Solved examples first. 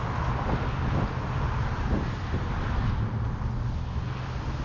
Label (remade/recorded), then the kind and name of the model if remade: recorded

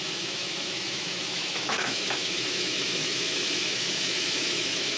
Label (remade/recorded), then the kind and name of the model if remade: remade, autoencoder, DAC-VAE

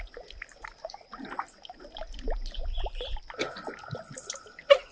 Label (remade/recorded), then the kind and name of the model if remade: recorded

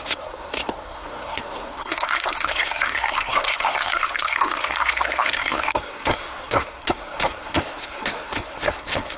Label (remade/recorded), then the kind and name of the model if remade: remade, codec, SNAC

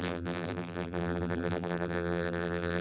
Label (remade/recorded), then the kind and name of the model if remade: remade, vocoder, BigVGAN v2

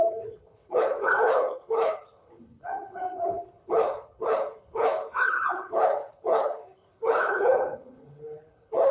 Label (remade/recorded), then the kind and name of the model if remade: remade, codec, HILCodec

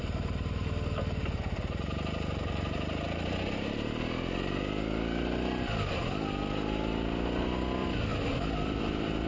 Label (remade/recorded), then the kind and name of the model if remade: recorded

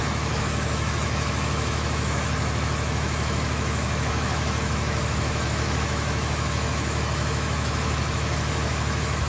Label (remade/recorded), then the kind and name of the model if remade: remade, autoencoder, DAC-VAE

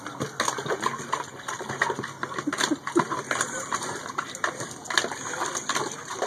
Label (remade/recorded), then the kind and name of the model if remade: recorded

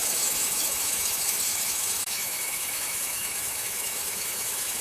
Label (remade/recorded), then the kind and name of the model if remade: remade, autoencoder, DAC-VAE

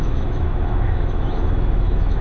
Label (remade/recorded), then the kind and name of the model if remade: remade, autoencoder, DAC-VAE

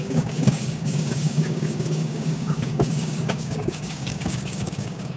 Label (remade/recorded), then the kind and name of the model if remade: remade, codec, DAC